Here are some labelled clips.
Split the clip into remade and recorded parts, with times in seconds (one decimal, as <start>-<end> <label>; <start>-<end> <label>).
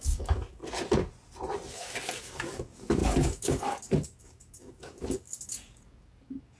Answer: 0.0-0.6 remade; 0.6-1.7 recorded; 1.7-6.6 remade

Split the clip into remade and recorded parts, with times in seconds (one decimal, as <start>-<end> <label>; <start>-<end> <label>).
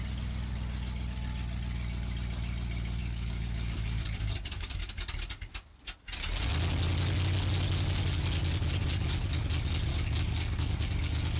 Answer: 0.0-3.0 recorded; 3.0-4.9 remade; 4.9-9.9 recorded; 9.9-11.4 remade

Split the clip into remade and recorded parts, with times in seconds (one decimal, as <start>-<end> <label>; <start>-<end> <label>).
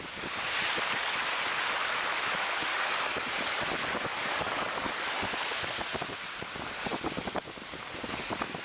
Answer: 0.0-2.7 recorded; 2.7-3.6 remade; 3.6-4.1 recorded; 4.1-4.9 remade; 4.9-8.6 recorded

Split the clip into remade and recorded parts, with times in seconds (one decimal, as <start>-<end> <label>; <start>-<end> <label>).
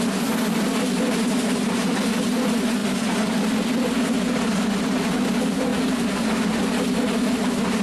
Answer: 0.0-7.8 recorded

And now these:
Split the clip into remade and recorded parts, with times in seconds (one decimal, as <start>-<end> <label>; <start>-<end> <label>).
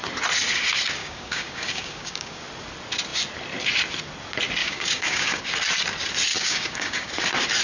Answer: 0.0-1.0 recorded; 1.0-2.4 remade; 2.4-4.6 recorded; 4.6-5.4 remade; 5.4-6.3 recorded; 6.3-7.1 remade; 7.1-7.6 recorded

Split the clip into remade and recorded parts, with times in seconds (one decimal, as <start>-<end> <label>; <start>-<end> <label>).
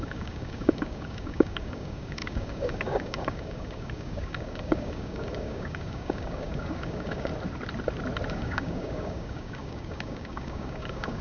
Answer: 0.0-7.3 remade; 7.3-8.3 recorded; 8.3-11.2 remade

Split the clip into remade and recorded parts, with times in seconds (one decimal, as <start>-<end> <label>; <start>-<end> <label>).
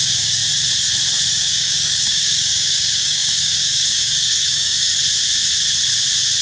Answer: 0.0-0.4 remade; 0.4-1.3 recorded; 1.3-5.0 remade; 5.0-6.4 recorded